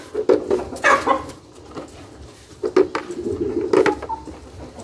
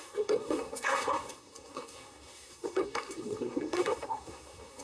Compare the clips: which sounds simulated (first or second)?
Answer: second